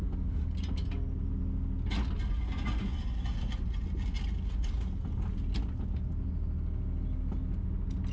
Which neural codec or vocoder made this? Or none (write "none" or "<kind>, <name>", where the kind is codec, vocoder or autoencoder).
none